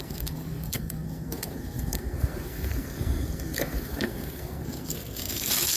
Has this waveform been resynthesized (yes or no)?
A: yes